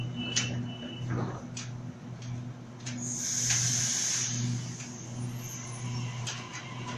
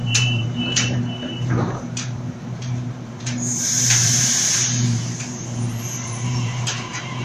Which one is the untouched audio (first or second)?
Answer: first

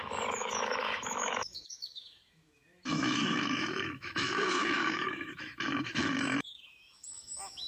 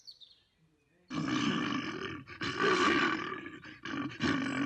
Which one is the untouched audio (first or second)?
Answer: second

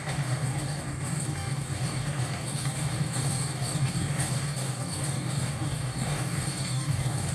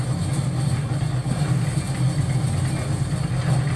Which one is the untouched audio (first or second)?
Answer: second